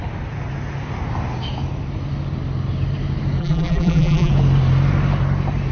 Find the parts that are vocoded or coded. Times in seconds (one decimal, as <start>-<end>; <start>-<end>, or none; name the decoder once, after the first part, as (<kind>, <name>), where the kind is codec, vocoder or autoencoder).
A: 3.4-4.3 (vocoder, BigVGAN v2)